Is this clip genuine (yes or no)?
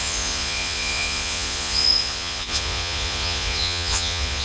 no